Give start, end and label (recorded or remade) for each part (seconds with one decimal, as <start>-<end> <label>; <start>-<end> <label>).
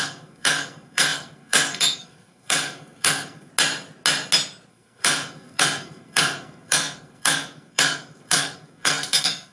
0.0-3.5 remade; 3.5-4.7 recorded; 4.7-9.5 remade